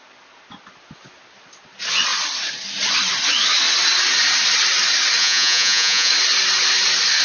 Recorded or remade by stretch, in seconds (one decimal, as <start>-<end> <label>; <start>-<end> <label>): 0.0-5.2 recorded; 5.2-6.1 remade; 6.1-7.2 recorded